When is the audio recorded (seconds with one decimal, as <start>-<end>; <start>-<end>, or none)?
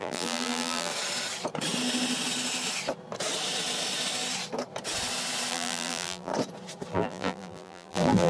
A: 0.9-5.5; 6.3-6.9